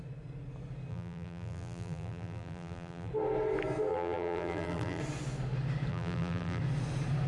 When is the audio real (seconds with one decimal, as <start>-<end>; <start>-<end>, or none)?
0.0-0.9; 3.1-3.9; 5.0-5.9; 6.6-7.3